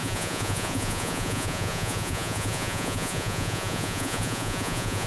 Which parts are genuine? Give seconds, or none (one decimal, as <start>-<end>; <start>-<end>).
none